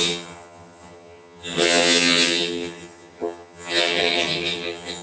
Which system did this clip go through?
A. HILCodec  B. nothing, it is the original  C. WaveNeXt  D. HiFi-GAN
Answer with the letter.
D